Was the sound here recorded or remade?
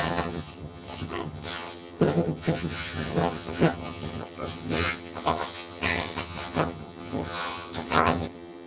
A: remade